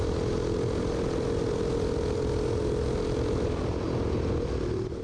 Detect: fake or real real